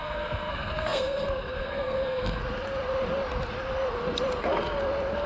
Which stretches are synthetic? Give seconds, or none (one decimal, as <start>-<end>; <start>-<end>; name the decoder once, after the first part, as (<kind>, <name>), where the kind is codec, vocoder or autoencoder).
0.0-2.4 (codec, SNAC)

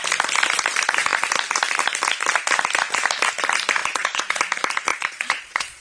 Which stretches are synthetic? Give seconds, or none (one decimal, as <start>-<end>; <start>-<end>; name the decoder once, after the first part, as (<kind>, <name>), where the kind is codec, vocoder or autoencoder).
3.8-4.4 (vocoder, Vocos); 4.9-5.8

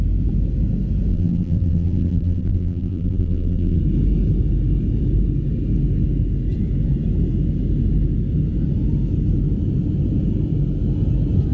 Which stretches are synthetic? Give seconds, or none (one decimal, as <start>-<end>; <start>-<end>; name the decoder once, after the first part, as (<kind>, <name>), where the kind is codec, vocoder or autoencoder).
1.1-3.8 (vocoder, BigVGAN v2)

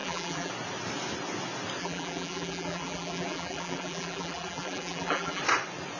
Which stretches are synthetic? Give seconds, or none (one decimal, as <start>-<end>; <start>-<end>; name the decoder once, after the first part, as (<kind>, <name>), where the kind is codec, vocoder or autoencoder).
0.0-0.5 (vocoder, BigVGAN v2); 1.8-5.4